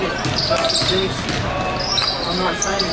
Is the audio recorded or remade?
recorded